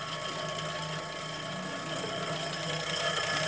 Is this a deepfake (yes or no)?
no